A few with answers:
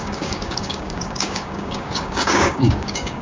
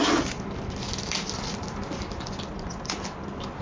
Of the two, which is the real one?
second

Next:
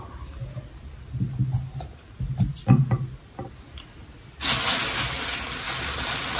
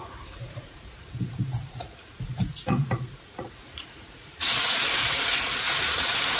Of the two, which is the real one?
first